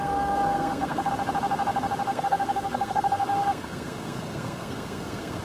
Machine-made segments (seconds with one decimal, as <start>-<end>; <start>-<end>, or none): 0.0-1.1; 2.1-5.4